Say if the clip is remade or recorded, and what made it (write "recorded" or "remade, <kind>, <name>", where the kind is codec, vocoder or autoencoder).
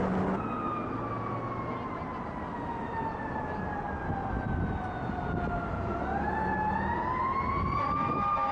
recorded